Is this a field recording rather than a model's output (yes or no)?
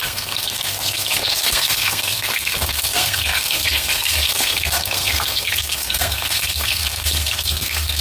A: no